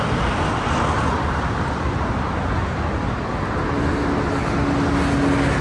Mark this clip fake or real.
real